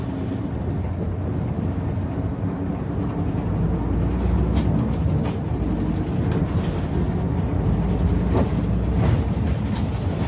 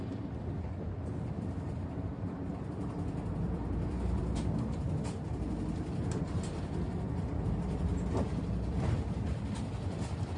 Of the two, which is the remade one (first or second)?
second